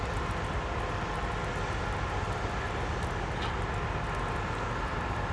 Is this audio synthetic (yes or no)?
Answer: no